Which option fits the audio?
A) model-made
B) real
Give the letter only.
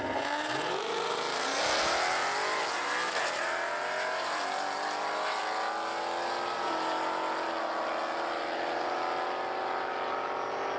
B